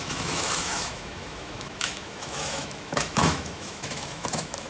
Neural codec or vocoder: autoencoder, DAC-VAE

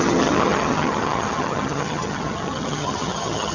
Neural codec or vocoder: vocoder, HiFi-GAN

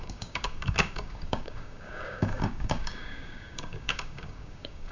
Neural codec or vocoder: codec, DAC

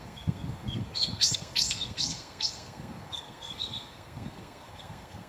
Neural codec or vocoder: codec, SNAC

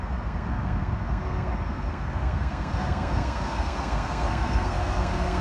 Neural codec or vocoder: codec, SNAC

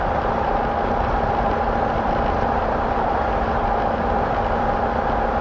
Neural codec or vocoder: none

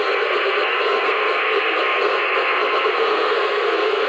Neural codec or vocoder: codec, SNAC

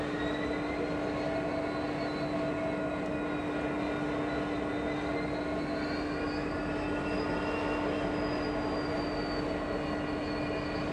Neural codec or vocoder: none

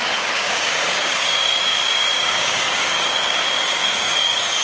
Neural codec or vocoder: codec, DAC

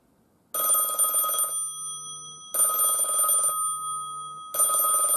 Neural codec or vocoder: none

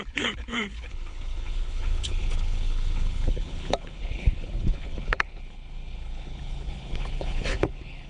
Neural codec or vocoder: codec, HILCodec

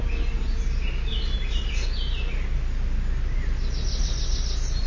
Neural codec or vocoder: none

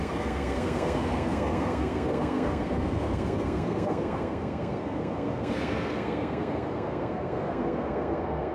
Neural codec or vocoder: codec, SNAC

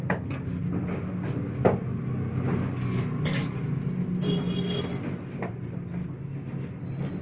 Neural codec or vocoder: none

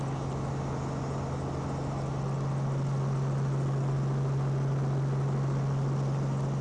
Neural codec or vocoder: none